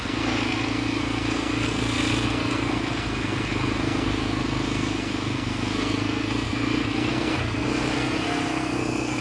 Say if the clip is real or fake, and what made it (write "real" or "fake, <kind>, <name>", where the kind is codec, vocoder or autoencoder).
fake, codec, SNAC